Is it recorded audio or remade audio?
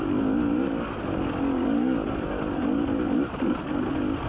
recorded